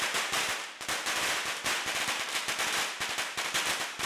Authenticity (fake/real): real